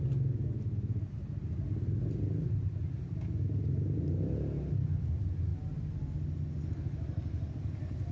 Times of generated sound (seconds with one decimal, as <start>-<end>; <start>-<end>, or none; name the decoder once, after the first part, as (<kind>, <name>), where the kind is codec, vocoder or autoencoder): none

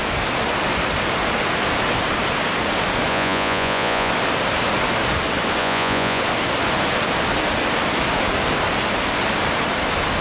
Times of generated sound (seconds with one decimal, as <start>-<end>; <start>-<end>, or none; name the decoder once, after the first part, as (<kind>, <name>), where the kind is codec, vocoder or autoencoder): 3.1-4.1 (vocoder, Vocos); 5.6-6.2

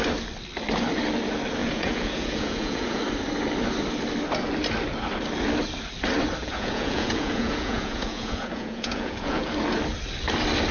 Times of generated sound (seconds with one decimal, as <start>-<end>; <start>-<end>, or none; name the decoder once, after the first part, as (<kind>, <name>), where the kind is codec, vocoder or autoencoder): 1.6-3.0 (vocoder, Vocos); 6.4-9.5

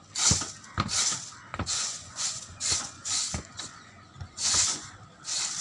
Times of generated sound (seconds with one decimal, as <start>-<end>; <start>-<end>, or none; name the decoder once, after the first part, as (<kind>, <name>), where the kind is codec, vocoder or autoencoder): 1.5-4.9 (vocoder, Vocos)

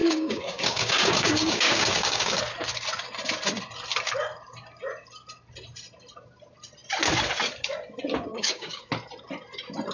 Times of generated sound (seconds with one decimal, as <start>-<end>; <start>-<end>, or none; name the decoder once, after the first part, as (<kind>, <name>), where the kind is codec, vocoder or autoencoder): 0.0-2.4 (codec, DAC); 8.3-8.9